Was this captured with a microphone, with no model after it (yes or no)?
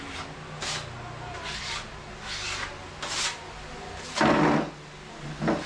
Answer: yes